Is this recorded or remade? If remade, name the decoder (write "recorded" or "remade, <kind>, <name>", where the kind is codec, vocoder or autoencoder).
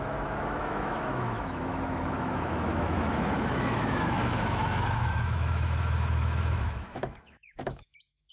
remade, autoencoder, DAC-VAE